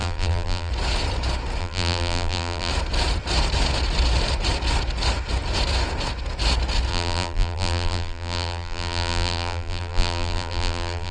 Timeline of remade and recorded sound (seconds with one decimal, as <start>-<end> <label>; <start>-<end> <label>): 0.0-0.7 remade; 0.7-1.6 recorded; 1.6-2.7 remade; 2.7-6.9 recorded; 6.9-11.1 remade